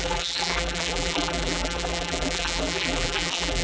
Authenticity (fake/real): fake